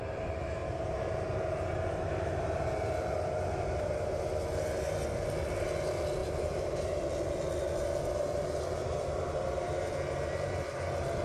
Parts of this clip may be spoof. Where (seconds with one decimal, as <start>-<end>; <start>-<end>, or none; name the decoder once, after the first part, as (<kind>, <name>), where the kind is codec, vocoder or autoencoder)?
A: 0.6-3.8 (vocoder, BigVGAN v2); 6.2-7.0; 8.8-11.2